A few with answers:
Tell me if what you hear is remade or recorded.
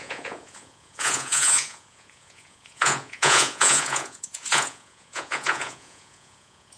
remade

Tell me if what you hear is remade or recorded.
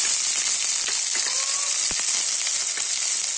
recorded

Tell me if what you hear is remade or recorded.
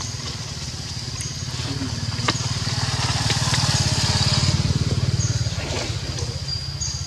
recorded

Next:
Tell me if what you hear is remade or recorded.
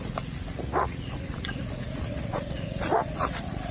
remade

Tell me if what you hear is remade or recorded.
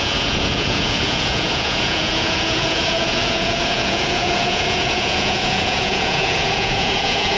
remade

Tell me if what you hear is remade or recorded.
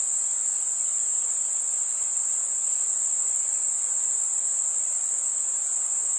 recorded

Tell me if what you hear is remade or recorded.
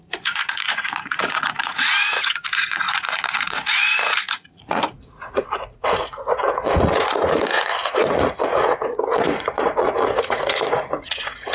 remade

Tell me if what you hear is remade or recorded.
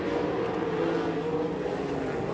recorded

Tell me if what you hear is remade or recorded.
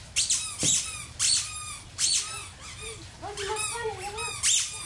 recorded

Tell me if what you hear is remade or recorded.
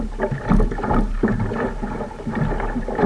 recorded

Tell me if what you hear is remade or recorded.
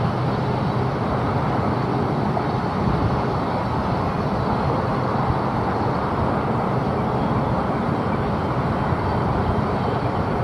recorded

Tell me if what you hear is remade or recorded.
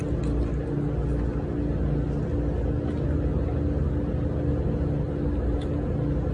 recorded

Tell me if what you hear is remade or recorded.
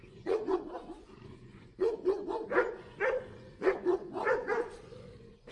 remade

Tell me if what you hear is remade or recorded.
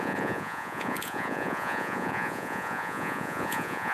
remade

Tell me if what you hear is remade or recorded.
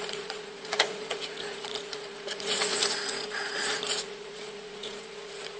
remade